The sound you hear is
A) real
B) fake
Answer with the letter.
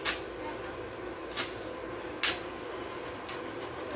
A